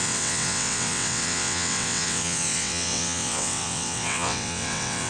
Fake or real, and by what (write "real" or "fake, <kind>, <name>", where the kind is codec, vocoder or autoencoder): fake, vocoder, WaveNeXt